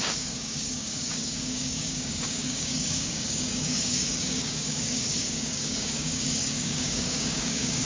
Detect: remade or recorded remade